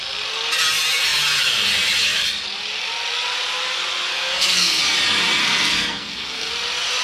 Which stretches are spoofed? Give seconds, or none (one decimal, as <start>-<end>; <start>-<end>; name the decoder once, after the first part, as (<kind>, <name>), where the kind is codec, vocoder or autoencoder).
4.1-4.8 (codec, SNAC); 5.4-6.5